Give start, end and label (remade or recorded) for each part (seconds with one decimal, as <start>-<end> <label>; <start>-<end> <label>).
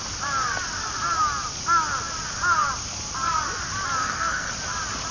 0.0-4.0 recorded; 4.0-4.5 remade; 4.5-5.1 recorded